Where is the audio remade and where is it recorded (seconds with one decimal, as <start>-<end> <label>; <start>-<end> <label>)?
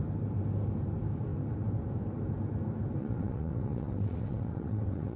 0.0-3.0 recorded; 3.0-5.2 remade